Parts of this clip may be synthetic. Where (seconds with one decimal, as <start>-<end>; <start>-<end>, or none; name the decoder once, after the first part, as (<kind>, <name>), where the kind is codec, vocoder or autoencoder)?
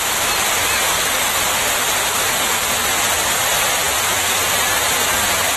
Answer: 2.0-5.6 (vocoder, BigVGAN v2)